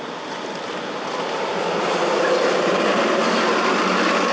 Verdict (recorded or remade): recorded